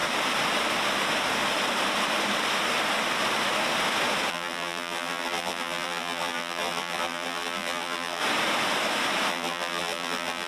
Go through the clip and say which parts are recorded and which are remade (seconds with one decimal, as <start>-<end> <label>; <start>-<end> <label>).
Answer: 0.0-4.3 recorded; 4.3-8.2 remade; 8.2-9.3 recorded; 9.3-10.5 remade